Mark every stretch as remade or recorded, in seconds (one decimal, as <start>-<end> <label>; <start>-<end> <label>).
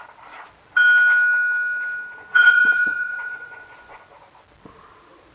0.0-2.3 recorded; 2.3-4.0 remade; 4.0-5.3 recorded